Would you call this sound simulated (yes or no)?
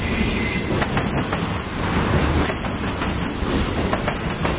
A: no